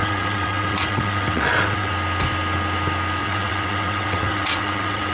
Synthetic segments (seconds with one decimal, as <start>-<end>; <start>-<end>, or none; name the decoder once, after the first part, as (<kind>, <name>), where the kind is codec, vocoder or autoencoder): 0.0-1.9 (vocoder, WaveNeXt); 3.2-5.1